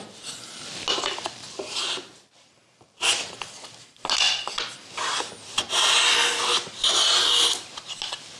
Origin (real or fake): real